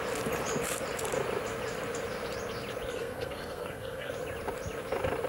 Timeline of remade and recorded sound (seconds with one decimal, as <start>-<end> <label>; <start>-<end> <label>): 0.0-2.9 recorded; 2.9-4.1 remade; 4.1-5.3 recorded